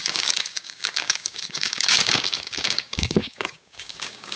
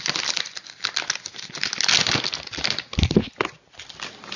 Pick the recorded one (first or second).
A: second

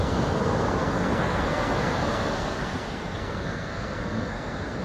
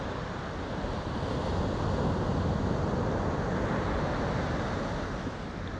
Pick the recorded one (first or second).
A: second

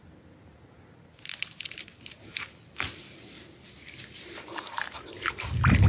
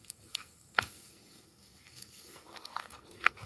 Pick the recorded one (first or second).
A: first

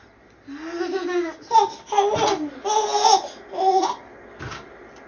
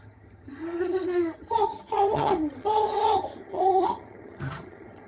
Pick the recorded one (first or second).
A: first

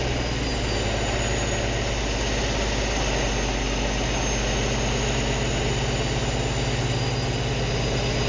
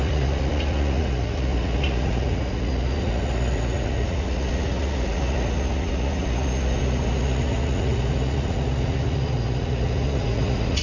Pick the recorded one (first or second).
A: first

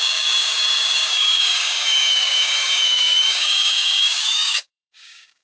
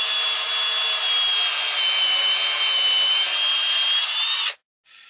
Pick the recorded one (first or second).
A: second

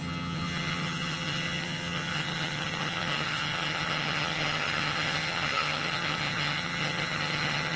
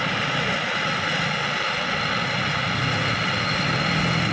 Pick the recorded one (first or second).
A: second